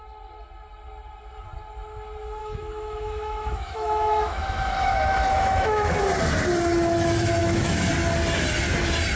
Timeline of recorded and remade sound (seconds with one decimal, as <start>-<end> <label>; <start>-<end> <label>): 0.0-2.4 recorded; 2.4-6.0 remade; 6.0-7.4 recorded; 7.4-7.9 remade; 7.9-9.2 recorded